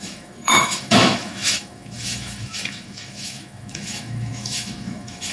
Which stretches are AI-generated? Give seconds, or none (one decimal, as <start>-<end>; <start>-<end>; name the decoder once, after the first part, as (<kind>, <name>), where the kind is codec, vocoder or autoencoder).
0.0-5.3 (autoencoder, DAC-VAE)